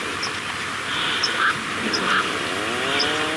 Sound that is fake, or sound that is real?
real